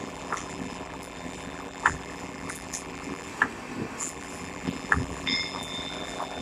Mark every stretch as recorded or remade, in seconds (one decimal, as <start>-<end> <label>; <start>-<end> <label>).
0.0-3.3 remade; 3.3-4.0 recorded; 4.0-6.4 remade